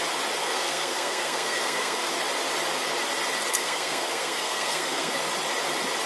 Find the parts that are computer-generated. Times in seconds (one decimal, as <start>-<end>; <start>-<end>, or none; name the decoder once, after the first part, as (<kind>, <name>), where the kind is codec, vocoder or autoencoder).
0.4-2.1 (codec, SNAC); 3.5-5.2

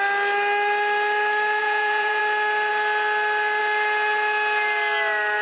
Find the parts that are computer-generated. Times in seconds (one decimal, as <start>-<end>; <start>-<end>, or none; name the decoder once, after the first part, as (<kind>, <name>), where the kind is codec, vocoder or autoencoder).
1.6-2.2 (vocoder, Vocos)

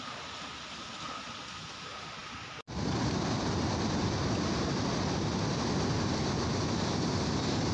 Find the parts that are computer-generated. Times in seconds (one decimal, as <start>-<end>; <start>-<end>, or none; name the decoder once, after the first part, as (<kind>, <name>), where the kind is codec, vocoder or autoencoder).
none

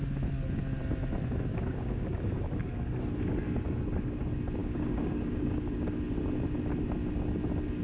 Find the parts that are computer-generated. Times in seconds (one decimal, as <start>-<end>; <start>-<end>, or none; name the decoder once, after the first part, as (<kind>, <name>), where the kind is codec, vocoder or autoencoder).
1.5-2.7 (codec, DAC); 4.6-6.0

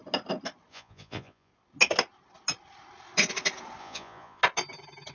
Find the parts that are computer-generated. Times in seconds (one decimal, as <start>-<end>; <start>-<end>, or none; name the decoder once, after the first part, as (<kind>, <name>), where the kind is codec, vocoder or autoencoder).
0.7-1.5 (vocoder, Vocos); 3.8-4.4

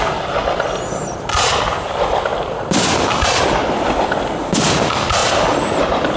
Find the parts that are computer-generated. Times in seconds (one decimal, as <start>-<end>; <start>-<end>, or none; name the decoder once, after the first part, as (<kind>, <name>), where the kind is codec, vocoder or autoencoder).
5.2-6.2 (vocoder, BigVGAN v2)

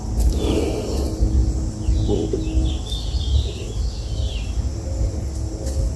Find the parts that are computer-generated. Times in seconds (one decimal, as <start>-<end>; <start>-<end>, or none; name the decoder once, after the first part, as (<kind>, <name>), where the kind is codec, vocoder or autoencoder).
4.7-5.3 (vocoder, BigVGAN v2)

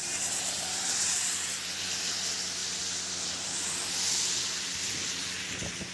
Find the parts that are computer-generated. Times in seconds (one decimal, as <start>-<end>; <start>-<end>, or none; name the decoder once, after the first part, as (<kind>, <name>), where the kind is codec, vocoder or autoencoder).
none